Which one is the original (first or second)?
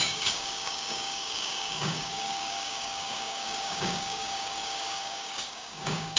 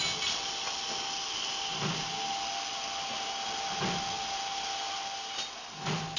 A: second